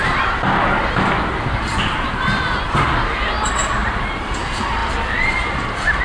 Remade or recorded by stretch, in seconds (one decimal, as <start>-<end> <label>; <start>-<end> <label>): 0.0-1.7 recorded; 1.7-2.4 remade; 2.4-3.8 recorded; 3.8-4.3 remade; 4.3-6.0 recorded